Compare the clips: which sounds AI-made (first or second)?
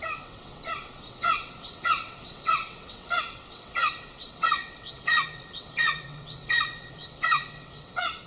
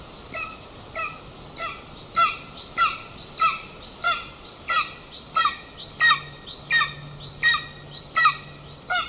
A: first